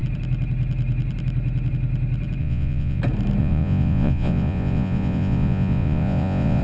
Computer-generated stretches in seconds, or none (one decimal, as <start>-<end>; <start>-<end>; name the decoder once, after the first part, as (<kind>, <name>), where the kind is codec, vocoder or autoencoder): 2.4-3.0 (vocoder, Vocos); 3.4-6.6